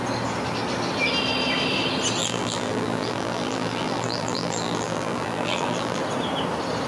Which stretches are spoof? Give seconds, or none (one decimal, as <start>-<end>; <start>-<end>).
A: 2.2-6.0